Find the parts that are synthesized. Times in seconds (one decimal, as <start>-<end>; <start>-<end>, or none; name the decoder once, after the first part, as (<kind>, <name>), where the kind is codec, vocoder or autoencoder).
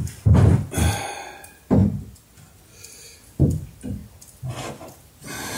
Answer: none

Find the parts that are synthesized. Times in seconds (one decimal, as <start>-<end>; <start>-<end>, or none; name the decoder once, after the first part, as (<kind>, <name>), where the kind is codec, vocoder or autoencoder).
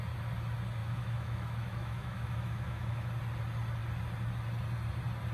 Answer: 0.8-3.1 (autoencoder, DAC-VAE)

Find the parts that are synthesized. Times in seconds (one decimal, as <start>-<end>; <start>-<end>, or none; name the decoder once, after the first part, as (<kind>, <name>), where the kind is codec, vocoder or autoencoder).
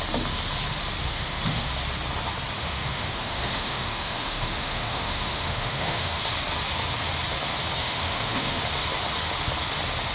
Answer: 1.0-1.7 (autoencoder, DAC-VAE); 2.6-6.2; 7.8-8.6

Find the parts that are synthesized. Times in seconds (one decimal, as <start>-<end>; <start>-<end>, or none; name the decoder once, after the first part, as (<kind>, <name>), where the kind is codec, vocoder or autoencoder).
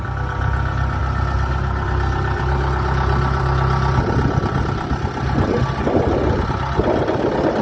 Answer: none